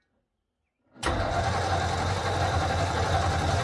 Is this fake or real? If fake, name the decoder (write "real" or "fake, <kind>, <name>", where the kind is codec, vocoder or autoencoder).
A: real